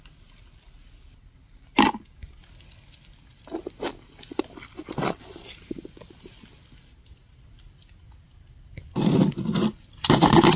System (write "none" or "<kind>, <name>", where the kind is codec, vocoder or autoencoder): none